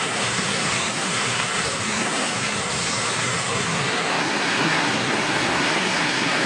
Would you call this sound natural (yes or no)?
no